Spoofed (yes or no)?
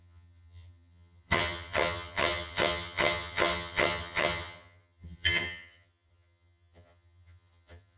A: yes